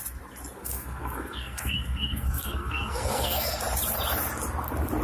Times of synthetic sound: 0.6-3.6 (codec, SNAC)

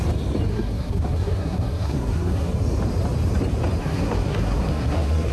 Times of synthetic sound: 0.5-2.5 (codec, SNAC); 3.8-5.3

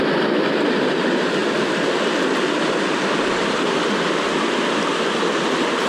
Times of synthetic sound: none